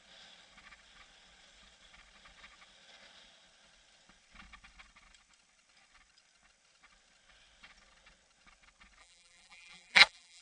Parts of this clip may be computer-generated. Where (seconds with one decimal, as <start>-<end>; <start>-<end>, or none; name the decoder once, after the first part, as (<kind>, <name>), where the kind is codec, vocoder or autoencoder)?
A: 9.0-10.4 (vocoder, BigVGAN v2)

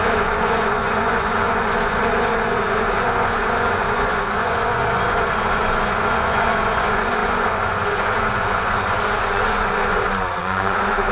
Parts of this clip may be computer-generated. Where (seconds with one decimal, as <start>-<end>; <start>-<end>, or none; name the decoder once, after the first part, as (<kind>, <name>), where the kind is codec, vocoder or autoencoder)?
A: 0.0-11.1 (vocoder, Vocos)

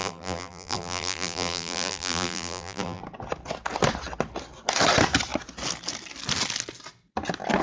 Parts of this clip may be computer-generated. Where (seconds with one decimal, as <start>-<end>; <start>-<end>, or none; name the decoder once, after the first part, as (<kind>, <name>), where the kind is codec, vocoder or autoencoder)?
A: 0.0-3.0 (vocoder, BigVGAN v2)

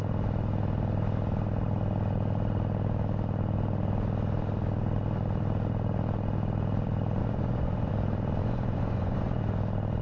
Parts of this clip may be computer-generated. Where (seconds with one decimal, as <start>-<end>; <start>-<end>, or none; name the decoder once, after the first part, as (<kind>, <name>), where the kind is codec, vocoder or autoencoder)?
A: 7.2-7.9 (vocoder, Vocos); 8.4-9.4